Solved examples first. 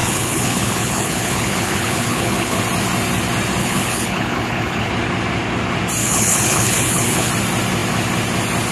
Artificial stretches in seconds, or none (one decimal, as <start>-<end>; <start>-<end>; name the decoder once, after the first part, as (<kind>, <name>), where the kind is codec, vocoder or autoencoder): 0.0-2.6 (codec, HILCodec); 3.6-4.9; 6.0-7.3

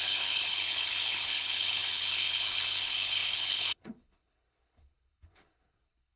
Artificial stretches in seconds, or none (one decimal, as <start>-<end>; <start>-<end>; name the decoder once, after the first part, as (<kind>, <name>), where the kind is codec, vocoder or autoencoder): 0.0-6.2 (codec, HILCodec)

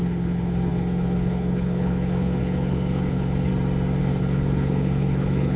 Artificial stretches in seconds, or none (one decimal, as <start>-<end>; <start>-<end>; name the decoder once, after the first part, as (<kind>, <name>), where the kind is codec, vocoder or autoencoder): 0.0-3.5 (codec, HILCodec); 4.0-5.6

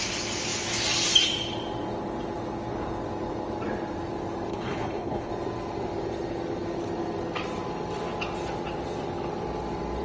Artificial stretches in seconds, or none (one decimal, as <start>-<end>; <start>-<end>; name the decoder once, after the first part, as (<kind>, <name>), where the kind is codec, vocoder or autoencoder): 4.5-5.3 (codec, HILCodec)

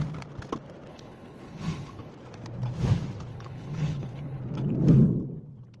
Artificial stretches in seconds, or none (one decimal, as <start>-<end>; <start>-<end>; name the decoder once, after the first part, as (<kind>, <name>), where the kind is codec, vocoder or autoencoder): 0.9-2.1 (codec, HILCodec); 3.3-4.4